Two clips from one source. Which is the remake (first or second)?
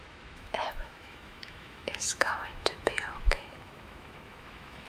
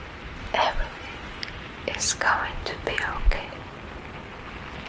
first